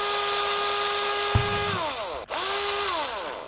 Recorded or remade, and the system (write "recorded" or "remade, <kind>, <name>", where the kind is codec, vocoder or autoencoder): recorded